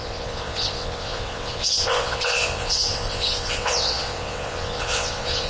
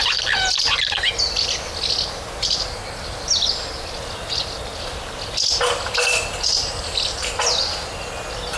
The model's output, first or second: first